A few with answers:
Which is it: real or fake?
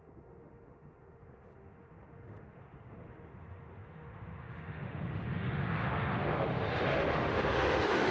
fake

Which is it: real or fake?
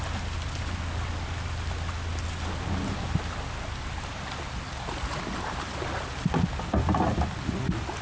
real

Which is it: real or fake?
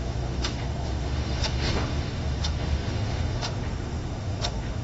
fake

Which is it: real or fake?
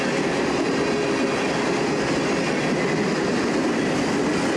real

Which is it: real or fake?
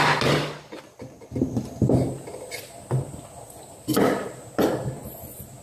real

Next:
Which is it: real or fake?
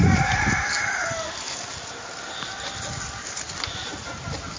real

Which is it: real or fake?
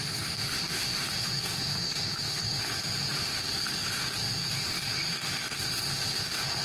fake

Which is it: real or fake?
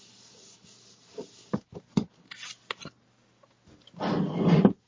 real